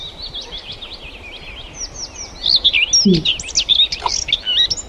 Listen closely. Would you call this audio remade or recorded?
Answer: recorded